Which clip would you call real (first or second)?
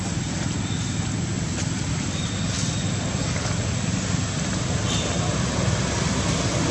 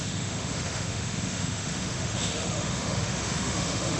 first